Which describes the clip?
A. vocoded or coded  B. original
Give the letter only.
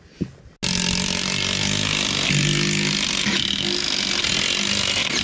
B